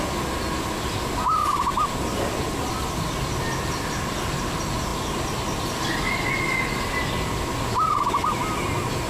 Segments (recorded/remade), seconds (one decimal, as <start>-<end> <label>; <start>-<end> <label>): 0.0-9.1 recorded